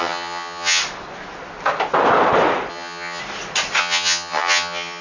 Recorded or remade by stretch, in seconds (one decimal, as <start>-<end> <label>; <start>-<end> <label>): 0.0-0.8 remade; 0.8-2.7 recorded; 2.7-3.2 remade; 3.2-3.8 recorded; 3.8-5.0 remade